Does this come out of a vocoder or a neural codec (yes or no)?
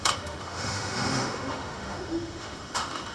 yes